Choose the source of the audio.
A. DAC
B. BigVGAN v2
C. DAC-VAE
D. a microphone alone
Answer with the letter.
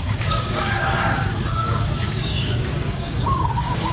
A